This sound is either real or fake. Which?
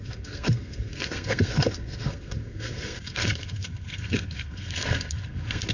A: fake